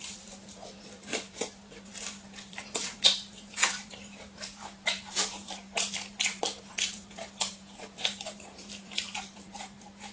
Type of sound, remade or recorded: remade